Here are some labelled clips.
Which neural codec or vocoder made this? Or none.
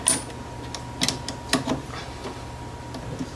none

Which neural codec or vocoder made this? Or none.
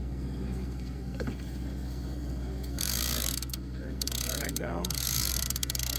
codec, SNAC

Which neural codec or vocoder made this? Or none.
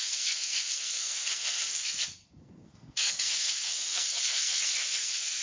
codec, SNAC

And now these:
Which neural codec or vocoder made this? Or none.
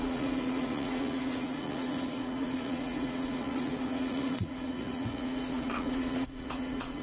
vocoder, Vocos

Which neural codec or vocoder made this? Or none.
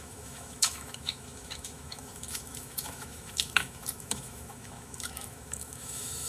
autoencoder, DAC-VAE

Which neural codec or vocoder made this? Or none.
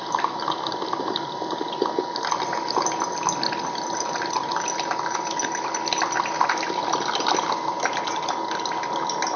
none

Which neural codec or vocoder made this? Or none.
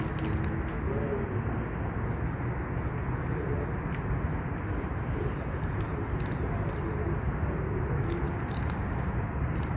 none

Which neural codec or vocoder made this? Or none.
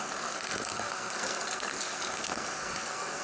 codec, SNAC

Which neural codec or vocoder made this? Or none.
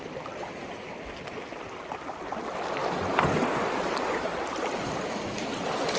none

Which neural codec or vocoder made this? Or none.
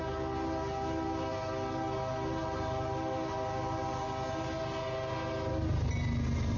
none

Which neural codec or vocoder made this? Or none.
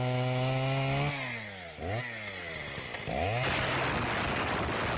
none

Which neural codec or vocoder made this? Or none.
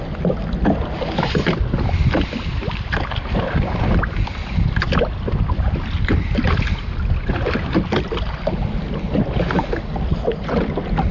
none